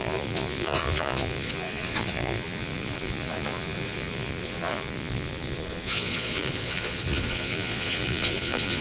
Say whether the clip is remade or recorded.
remade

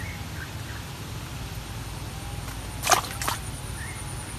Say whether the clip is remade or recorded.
recorded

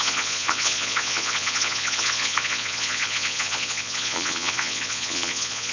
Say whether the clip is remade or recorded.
remade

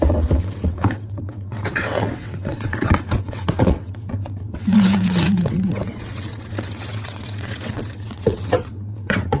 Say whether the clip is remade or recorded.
remade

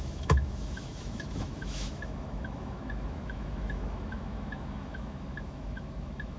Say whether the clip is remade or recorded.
remade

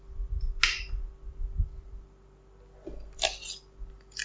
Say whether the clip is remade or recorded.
recorded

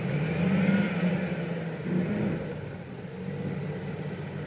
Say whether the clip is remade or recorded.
recorded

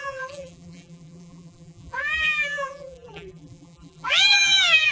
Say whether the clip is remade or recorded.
remade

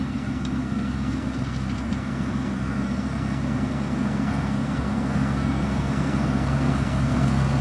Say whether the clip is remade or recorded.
remade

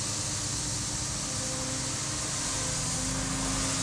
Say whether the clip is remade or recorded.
recorded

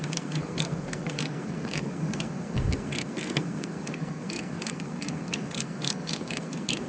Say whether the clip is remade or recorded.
remade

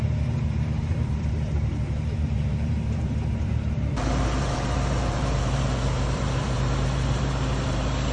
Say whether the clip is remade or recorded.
remade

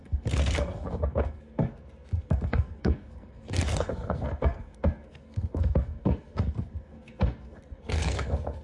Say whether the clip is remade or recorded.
remade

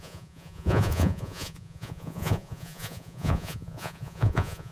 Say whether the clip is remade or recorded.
remade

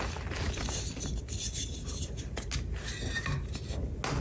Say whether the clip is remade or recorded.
recorded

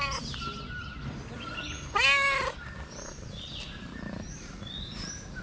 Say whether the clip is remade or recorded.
recorded